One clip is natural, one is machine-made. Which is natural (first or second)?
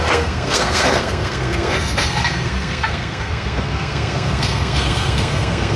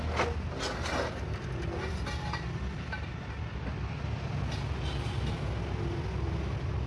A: second